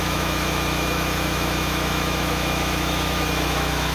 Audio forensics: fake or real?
fake